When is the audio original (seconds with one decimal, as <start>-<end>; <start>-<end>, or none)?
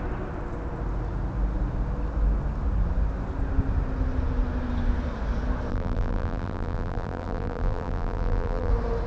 0.0-5.7; 8.7-9.1